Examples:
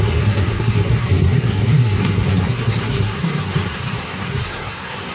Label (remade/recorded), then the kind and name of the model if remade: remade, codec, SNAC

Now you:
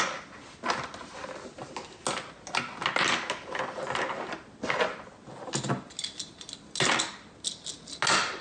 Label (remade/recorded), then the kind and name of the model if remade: recorded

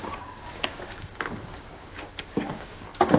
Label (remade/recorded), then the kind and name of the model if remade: remade, codec, DAC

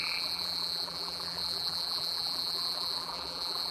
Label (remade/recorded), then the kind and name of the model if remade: remade, vocoder, BigVGAN v2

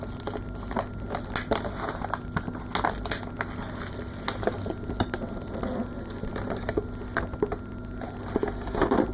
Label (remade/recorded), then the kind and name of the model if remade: recorded